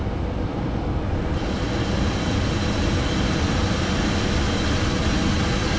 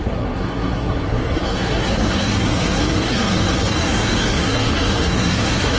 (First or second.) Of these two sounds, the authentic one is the first